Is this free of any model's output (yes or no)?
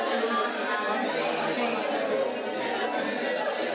yes